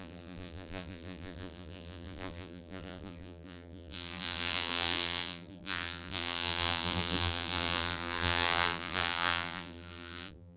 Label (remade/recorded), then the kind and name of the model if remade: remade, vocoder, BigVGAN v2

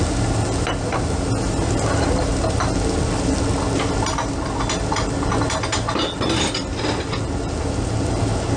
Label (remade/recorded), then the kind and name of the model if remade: recorded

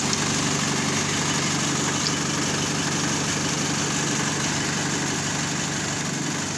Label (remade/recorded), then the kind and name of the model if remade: recorded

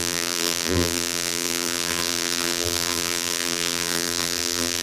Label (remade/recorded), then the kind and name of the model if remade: remade, vocoder, BigVGAN v2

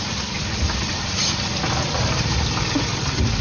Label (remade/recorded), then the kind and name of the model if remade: remade, vocoder, BigVGAN v2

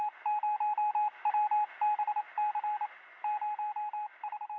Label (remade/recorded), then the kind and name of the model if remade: recorded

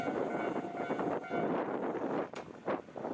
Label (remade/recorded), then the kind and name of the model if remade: recorded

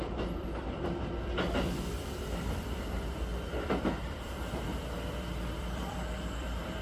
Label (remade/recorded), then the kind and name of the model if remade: remade, vocoder, BigVGAN v2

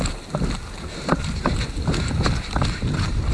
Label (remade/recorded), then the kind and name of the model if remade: recorded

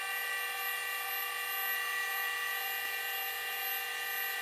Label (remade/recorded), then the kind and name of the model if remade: recorded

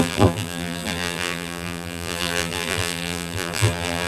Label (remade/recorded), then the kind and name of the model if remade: remade, vocoder, BigVGAN v2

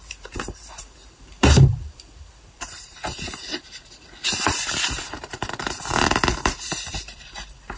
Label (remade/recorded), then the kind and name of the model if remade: remade, vocoder, BigVGAN v2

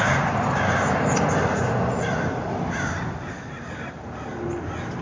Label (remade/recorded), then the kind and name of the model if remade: recorded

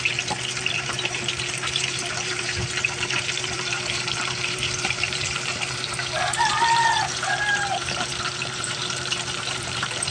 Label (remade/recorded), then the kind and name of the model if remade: remade, vocoder, BigVGAN v2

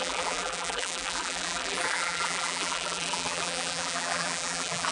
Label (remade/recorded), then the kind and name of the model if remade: remade, vocoder, BigVGAN v2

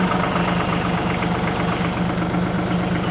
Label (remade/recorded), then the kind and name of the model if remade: remade, vocoder, BigVGAN v2